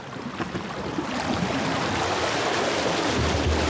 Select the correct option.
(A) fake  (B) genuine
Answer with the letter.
B